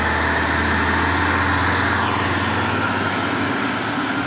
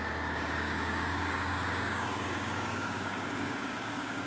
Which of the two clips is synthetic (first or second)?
second